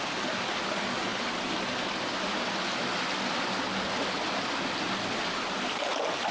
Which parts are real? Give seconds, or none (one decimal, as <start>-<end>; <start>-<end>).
0.0-6.3